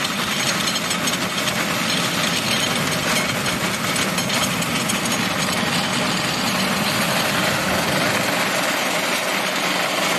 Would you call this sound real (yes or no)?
yes